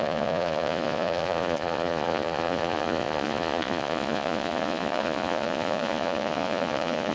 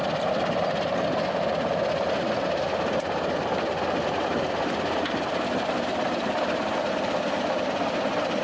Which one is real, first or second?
second